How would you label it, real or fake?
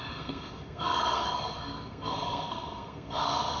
fake